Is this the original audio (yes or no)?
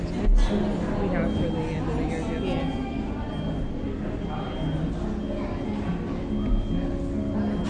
yes